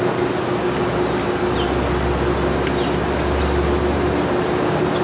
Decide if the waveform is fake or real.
real